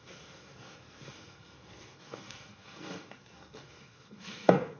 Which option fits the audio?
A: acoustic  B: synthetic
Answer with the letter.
B